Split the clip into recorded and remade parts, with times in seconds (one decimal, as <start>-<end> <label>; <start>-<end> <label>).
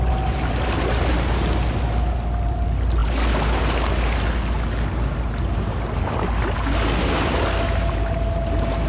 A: 0.0-8.9 recorded